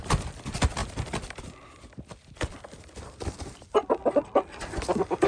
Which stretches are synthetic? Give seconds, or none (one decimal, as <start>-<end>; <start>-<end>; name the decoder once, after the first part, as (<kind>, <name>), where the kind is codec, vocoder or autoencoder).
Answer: none